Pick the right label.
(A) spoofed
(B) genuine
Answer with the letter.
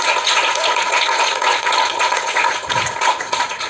A